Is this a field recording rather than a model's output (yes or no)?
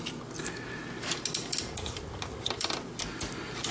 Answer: yes